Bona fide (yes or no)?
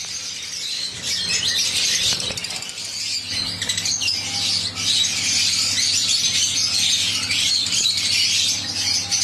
yes